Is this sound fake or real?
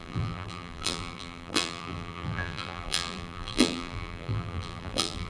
fake